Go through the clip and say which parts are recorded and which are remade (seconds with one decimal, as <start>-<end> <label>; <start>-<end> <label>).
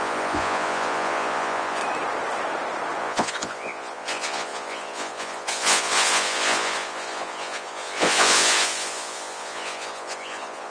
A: 0.0-1.8 remade; 1.8-3.0 recorded; 3.0-10.7 remade